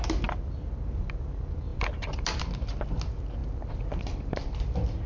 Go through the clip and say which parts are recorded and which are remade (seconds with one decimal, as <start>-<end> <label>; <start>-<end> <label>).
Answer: 0.0-5.1 recorded